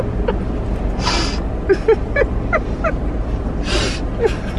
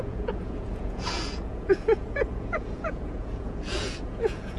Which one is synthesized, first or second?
second